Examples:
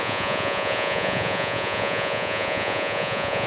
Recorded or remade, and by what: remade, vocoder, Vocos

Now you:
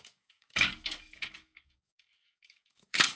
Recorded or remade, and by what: remade, codec, DAC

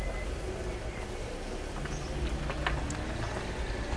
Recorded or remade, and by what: recorded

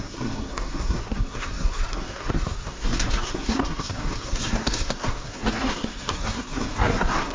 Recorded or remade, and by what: remade, codec, SNAC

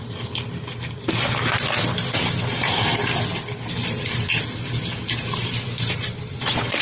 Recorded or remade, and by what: recorded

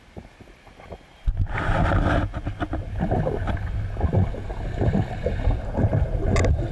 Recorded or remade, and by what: recorded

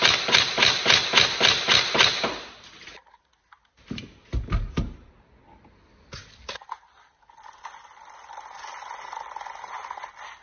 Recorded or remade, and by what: recorded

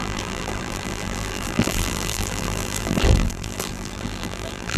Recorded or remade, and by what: remade, vocoder, BigVGAN v2